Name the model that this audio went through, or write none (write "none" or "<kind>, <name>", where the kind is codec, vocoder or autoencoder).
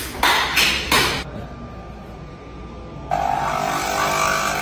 none